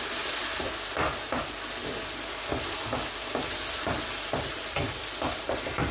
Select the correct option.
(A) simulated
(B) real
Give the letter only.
B